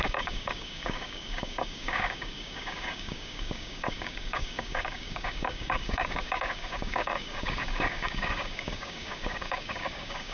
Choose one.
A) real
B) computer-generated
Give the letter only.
B